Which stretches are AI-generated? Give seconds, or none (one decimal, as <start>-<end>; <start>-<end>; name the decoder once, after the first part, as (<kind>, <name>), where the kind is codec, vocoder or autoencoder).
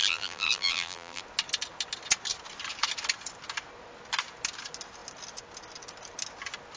0.0-1.2 (vocoder, BigVGAN v2)